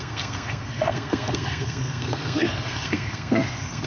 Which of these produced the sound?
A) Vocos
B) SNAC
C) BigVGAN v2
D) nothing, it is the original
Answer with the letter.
B